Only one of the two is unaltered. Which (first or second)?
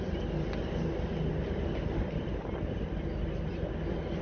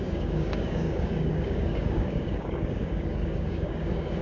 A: first